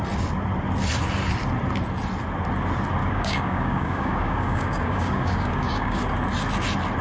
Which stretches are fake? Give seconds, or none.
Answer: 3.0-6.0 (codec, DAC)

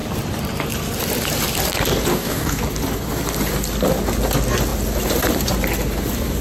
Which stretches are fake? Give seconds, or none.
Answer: 2.1-2.6 (codec, DAC)

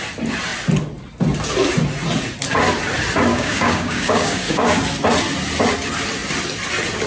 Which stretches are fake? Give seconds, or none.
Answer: 3.3-4.8 (codec, DAC)

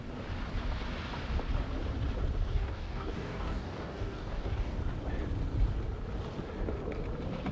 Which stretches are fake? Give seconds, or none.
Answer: 2.5-4.8 (codec, DAC)